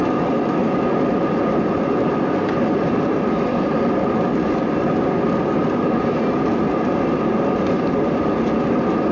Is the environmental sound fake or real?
real